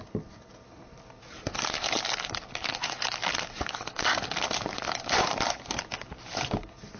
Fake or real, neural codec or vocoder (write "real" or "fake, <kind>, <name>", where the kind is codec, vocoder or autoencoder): real